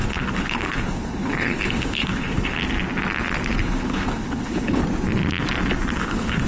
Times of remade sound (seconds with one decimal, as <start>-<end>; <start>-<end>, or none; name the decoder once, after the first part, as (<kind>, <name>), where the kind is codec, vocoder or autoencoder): 0.0-2.6 (codec, HILCodec); 3.6-4.8; 6.0-6.5